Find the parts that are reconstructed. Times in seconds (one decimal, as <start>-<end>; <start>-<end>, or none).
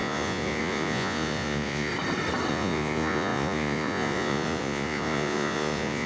0.0-1.9; 2.5-6.1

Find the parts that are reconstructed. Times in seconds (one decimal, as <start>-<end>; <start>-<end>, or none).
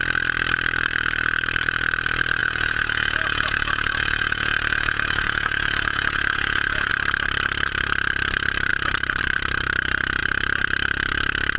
2.4-6.9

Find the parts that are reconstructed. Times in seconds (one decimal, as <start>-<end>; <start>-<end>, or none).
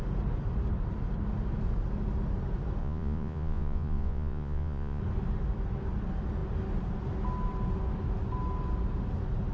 2.8-5.0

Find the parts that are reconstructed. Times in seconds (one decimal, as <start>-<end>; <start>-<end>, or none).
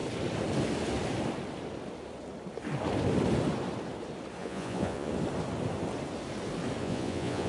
4.4-5.1; 6.8-7.5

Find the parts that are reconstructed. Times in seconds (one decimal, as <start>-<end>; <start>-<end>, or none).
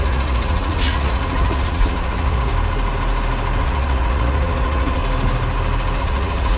0.0-2.5; 3.6-5.0; 6.0-6.6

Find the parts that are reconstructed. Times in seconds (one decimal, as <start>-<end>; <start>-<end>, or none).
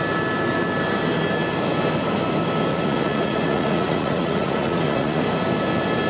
2.7-5.2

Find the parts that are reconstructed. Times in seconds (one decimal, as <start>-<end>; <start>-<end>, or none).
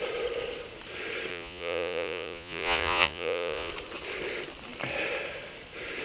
1.3-3.7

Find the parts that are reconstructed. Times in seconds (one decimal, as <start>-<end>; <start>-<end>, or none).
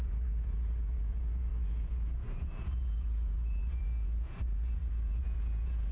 0.0-5.9